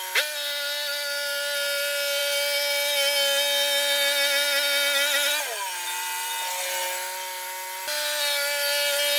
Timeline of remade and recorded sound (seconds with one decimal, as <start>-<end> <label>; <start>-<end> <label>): 0.0-9.2 recorded